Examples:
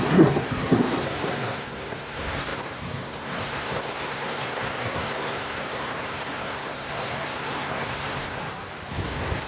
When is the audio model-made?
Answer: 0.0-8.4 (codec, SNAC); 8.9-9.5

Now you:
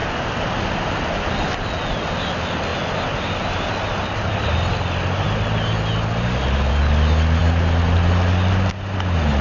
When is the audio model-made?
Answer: 0.0-2.3 (vocoder, BigVGAN v2)

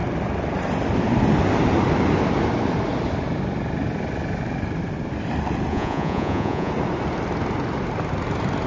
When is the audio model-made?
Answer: 5.7-6.7 (vocoder, Vocos)

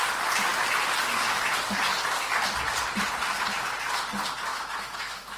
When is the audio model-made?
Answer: 4.5-5.4 (autoencoder, DAC-VAE)

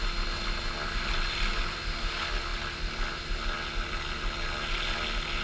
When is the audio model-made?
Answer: none

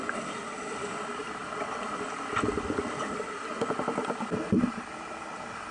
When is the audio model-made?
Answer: none

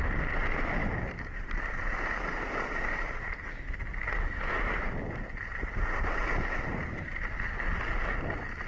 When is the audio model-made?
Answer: none

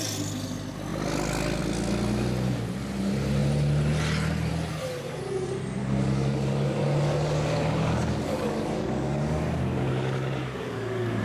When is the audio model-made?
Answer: 5.8-11.2 (codec, DAC)